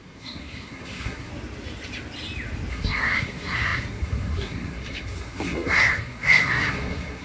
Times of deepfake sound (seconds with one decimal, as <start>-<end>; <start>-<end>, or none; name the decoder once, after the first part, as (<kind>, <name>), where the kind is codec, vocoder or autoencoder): 0.0-1.3 (codec, SNAC); 2.7-7.2

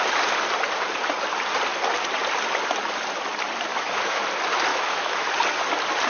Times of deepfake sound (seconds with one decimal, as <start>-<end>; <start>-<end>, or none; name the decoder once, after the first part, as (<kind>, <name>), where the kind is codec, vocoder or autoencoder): 3.7-4.2 (autoencoder, DAC-VAE); 4.7-5.3